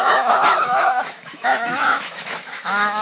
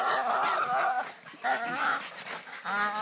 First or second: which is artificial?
first